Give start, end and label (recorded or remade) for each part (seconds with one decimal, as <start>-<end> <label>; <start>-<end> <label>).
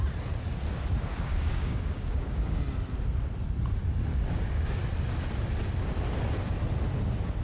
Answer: 0.0-1.3 recorded; 1.3-2.6 remade; 2.6-4.1 recorded; 4.1-4.8 remade; 4.8-7.4 recorded